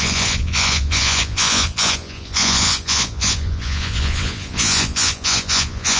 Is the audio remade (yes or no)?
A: yes